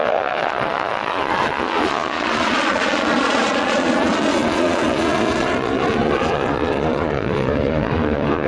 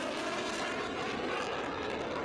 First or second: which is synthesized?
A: first